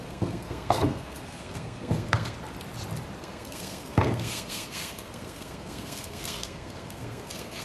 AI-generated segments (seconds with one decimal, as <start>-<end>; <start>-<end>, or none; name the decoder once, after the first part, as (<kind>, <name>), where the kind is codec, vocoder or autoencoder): 0.0-2.4 (codec, SNAC); 3.2-7.6